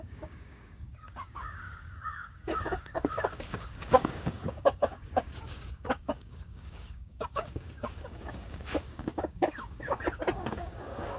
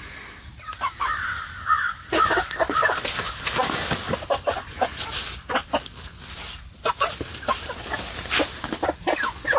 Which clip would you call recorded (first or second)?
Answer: second